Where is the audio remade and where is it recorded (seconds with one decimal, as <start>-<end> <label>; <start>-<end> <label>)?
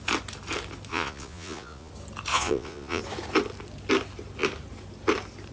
0.0-0.9 recorded; 0.9-1.9 remade; 1.9-2.3 recorded; 2.3-3.0 remade; 3.0-5.5 recorded